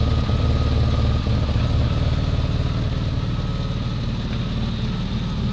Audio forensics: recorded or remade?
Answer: recorded